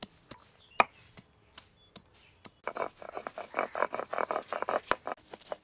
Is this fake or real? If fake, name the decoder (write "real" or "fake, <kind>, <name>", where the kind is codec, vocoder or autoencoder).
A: real